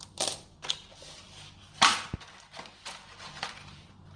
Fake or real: real